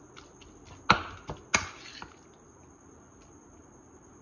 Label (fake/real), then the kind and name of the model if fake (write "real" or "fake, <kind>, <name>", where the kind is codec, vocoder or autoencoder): real